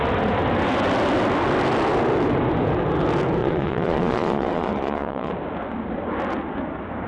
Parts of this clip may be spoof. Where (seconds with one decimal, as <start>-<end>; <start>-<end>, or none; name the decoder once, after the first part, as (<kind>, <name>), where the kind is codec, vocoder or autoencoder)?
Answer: 3.4-5.3 (vocoder, Vocos)